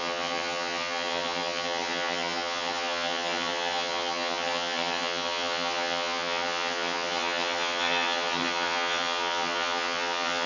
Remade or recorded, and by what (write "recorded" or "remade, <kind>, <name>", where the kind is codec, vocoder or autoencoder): remade, vocoder, HiFi-GAN